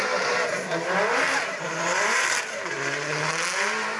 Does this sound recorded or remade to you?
recorded